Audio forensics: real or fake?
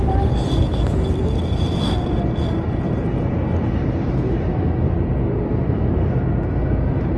real